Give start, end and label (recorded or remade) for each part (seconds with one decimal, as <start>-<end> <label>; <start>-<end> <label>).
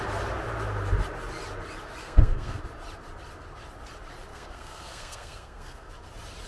0.0-2.0 recorded; 2.0-2.6 remade; 2.6-4.3 recorded; 4.3-5.9 remade; 5.9-6.5 recorded